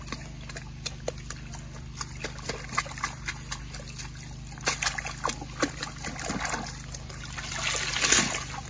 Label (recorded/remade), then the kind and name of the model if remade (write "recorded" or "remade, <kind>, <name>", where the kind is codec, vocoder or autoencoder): recorded